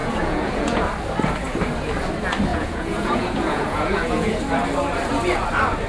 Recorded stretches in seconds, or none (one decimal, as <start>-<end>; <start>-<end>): 0.8-2.5; 4.4-5.9